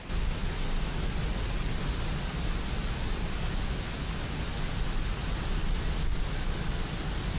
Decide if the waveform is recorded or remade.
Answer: recorded